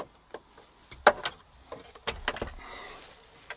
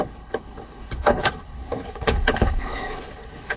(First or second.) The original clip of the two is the first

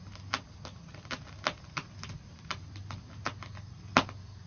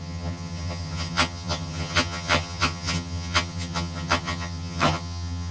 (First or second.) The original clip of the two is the first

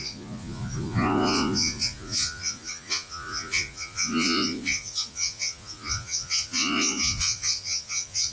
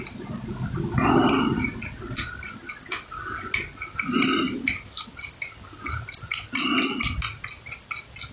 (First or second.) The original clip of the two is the second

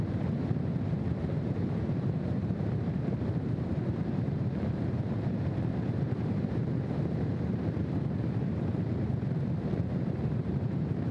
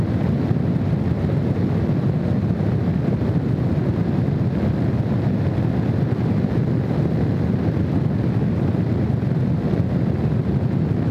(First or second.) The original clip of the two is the second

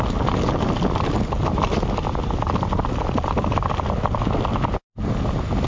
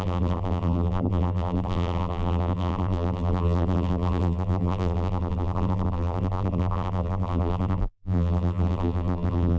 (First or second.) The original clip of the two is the first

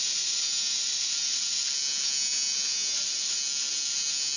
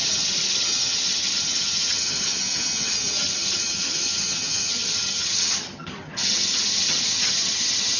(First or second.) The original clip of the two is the first